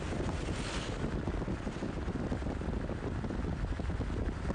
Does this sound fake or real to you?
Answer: real